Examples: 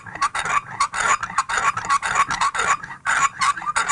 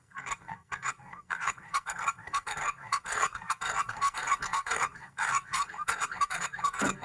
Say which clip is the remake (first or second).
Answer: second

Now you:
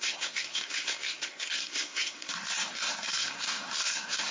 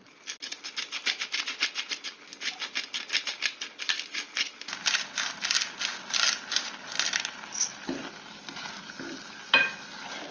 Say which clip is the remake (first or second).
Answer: first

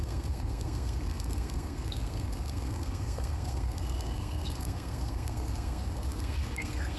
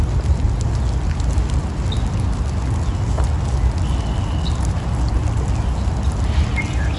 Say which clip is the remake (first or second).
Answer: first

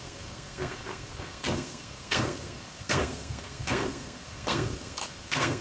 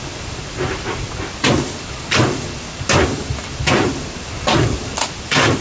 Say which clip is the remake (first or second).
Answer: first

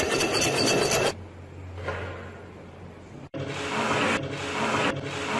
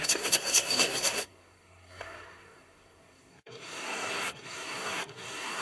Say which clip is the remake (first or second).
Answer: second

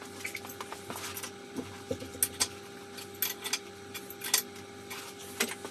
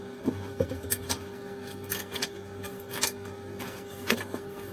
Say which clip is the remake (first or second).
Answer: second